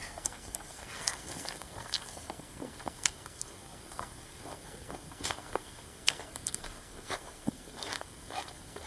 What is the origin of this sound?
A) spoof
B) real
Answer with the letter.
A